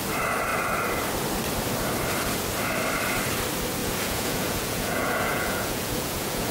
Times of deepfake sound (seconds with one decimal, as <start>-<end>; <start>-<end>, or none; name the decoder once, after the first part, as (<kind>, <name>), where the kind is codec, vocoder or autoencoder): 3.8-6.5 (vocoder, Vocos)